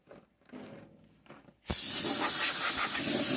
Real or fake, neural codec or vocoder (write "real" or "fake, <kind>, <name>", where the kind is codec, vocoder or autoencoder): real